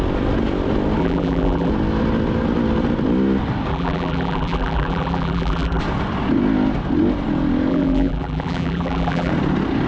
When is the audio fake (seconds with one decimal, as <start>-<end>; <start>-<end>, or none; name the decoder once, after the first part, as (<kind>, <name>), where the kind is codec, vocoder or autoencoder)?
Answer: 1.0-1.7 (vocoder, BigVGAN v2); 3.7-5.8; 7.7-9.3